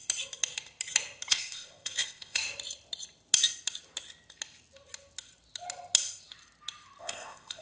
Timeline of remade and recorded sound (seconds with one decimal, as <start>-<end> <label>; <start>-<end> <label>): 0.0-1.3 recorded; 1.3-2.4 remade; 2.4-7.0 recorded; 7.0-7.6 remade